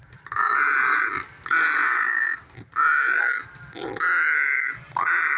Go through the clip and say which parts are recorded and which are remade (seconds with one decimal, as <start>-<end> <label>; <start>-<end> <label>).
0.0-5.4 recorded